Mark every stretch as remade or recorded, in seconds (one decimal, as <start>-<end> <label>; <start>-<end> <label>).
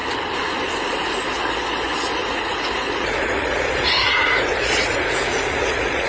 0.0-2.2 recorded; 2.2-6.1 remade